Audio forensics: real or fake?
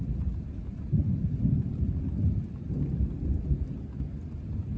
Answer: real